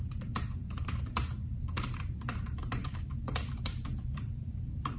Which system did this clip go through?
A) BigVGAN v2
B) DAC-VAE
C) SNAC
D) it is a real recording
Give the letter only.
A